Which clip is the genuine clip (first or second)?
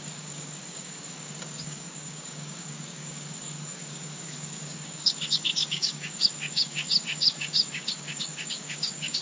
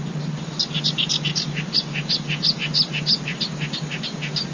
second